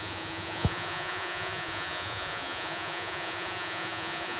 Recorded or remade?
remade